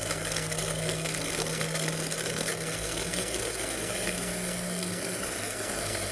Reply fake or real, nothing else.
fake